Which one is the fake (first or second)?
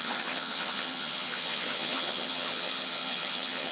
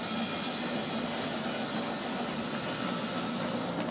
first